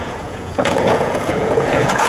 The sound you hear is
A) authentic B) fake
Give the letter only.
B